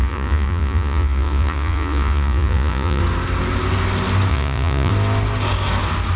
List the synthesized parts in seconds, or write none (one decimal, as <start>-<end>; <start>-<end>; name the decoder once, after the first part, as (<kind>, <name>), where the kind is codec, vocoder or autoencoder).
0.0-3.0 (vocoder, Vocos); 4.3-4.9